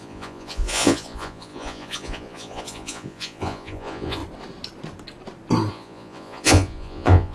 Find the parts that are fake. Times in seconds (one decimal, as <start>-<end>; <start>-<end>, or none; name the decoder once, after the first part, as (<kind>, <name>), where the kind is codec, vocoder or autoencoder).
0.0-4.2 (vocoder, Vocos); 5.7-7.3

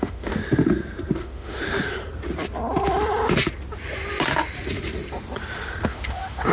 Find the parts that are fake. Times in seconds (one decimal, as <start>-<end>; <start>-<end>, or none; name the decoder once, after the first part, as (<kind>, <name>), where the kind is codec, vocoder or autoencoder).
0.0-0.4 (autoencoder, DAC-VAE); 1.2-2.0; 5.9-6.5

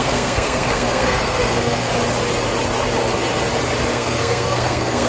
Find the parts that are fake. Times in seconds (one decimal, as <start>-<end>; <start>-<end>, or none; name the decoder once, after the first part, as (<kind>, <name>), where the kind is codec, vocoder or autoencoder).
0.0-1.9 (codec, SNAC); 3.9-5.1

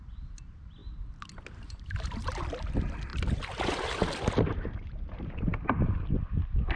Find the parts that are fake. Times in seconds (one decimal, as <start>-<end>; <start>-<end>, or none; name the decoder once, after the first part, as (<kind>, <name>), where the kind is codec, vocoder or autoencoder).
0.0-0.8 (vocoder, BigVGAN v2); 1.7-6.8

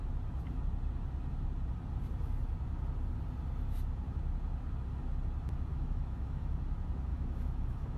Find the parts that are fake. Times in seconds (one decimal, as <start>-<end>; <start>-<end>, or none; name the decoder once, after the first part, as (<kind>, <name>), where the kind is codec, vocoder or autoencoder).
5.7-6.6 (autoencoder, DAC-VAE); 7.1-8.0

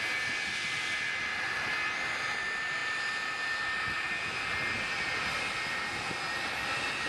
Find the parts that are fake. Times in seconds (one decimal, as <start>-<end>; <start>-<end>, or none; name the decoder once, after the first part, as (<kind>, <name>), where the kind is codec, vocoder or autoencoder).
none